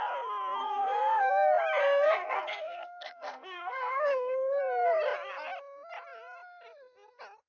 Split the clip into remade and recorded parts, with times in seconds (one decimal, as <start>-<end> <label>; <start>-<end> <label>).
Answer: 0.0-0.6 recorded; 0.6-1.3 remade; 1.3-1.8 recorded; 1.8-4.6 remade; 4.6-7.5 recorded

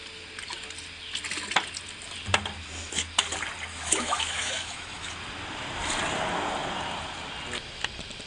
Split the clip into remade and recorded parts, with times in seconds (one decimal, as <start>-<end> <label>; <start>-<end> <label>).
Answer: 0.0-3.7 recorded; 3.7-5.1 remade; 5.1-8.3 recorded

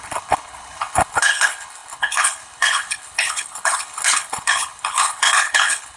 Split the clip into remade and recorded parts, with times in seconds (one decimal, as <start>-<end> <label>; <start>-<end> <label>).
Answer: 0.0-6.0 remade

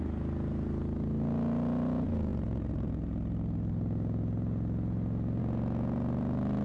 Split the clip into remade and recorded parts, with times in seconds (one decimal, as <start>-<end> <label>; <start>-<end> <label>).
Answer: 0.0-6.6 recorded